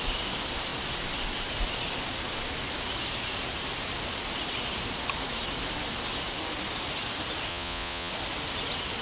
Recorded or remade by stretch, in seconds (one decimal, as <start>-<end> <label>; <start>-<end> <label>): 0.0-7.5 recorded; 7.5-8.1 remade; 8.1-9.0 recorded